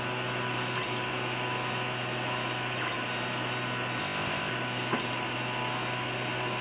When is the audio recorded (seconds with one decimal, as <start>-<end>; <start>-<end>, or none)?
0.0-4.0; 4.5-6.6